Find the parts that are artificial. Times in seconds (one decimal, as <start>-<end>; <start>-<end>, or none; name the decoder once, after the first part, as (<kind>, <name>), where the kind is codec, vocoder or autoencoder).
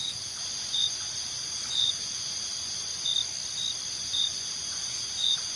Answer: 0.0-3.1 (vocoder, Vocos); 3.9-5.6